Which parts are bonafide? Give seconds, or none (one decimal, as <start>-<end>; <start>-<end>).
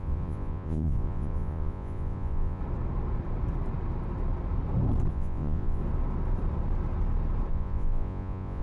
2.6-5.1; 5.8-7.5